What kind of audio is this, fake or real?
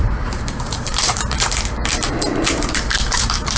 fake